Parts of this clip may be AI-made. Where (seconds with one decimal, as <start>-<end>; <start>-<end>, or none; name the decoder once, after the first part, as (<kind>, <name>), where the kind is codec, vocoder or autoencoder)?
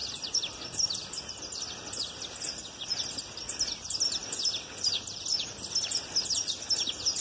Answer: none